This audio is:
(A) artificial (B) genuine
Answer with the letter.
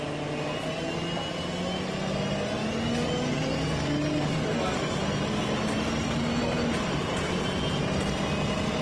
B